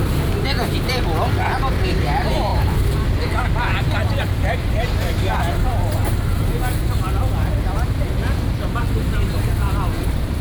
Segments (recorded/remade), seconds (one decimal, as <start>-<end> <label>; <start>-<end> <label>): 0.0-6.3 remade; 6.3-7.7 recorded; 7.7-10.4 remade